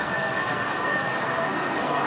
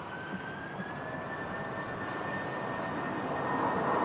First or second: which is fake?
first